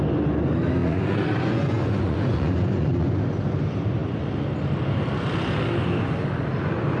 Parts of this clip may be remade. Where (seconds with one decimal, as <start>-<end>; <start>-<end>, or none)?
0.8-3.2